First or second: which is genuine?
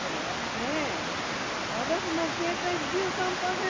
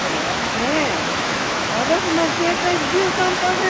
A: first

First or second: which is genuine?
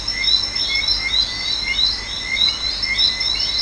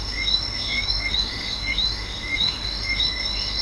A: first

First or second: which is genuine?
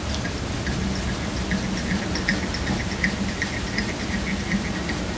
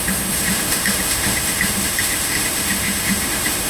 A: first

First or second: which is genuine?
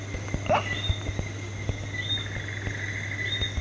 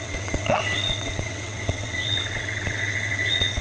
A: first